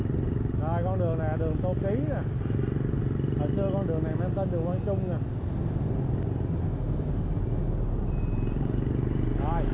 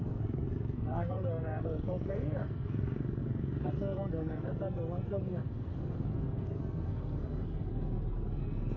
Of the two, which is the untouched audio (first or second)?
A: first